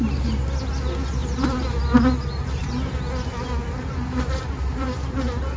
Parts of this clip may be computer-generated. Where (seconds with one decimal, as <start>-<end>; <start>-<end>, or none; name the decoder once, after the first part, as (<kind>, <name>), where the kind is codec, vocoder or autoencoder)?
none